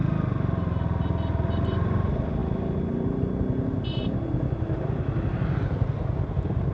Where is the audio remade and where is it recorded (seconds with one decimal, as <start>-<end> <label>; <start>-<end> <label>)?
0.0-6.7 recorded